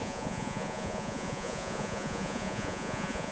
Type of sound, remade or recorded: remade